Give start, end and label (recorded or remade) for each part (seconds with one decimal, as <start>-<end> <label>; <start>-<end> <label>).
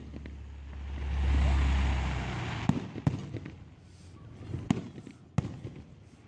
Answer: 0.0-6.3 recorded